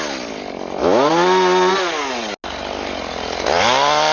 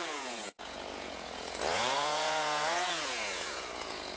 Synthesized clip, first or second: second